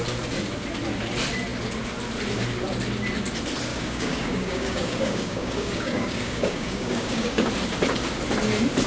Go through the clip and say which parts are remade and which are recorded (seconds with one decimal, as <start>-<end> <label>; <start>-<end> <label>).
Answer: 0.0-3.7 recorded; 3.7-7.5 remade; 7.5-8.9 recorded